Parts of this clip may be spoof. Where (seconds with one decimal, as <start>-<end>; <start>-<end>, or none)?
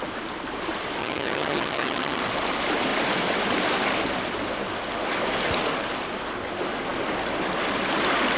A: 1.0-2.2